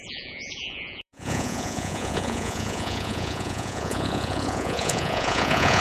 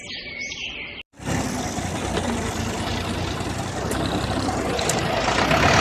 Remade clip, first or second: first